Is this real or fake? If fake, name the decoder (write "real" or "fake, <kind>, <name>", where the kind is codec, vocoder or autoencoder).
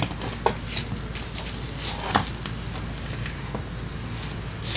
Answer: real